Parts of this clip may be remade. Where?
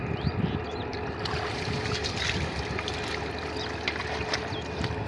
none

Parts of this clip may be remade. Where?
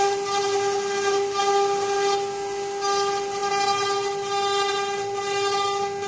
none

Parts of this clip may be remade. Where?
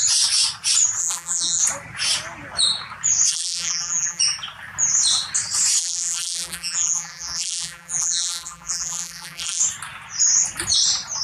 1.0-1.6 (vocoder, BigVGAN v2); 3.3-4.2; 5.8-9.6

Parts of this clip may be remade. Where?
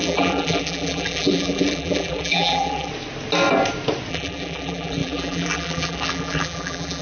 0.0-2.9 (vocoder, BigVGAN v2); 4.1-7.0